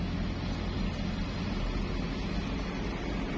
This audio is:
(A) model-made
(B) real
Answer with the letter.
B